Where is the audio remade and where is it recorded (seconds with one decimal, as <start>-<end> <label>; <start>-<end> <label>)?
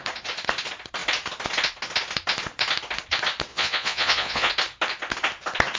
0.0-3.5 recorded; 3.5-4.5 remade; 4.5-5.8 recorded